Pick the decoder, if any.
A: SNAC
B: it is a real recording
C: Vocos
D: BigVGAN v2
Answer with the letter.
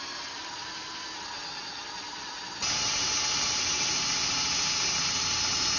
B